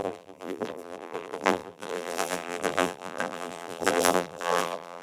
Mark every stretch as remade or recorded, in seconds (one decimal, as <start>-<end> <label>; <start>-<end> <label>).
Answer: 0.0-5.0 remade